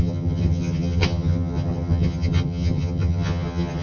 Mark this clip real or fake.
fake